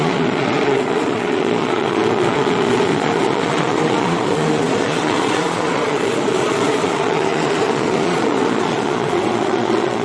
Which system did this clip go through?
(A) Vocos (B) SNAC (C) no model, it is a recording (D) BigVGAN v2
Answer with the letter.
A